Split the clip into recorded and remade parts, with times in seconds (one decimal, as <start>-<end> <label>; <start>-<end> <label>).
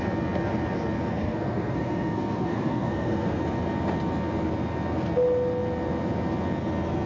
0.0-1.1 recorded; 1.1-3.4 remade; 3.4-7.1 recorded